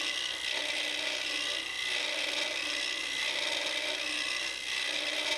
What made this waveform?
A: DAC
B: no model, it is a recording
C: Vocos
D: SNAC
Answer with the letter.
B